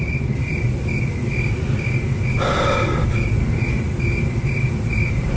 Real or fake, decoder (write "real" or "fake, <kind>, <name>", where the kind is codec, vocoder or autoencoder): real